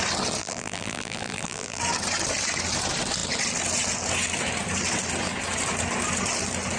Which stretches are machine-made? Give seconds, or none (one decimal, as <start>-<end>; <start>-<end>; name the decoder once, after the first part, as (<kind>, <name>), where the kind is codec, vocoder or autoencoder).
0.4-1.8 (vocoder, BigVGAN v2)